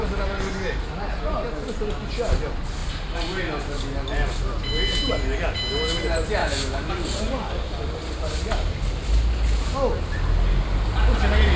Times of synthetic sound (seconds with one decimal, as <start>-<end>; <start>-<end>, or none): 6.4-6.9